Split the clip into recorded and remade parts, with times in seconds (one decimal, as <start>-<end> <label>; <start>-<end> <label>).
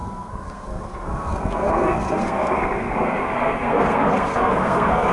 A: 0.0-5.1 remade